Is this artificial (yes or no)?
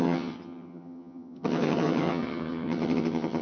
yes